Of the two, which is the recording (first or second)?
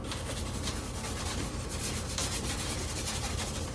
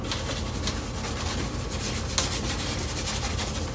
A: second